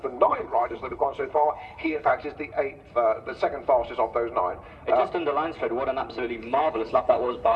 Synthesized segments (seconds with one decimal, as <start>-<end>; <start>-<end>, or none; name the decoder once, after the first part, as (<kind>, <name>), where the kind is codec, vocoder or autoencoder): 0.0-2.1 (codec, HILCodec); 6.4-7.6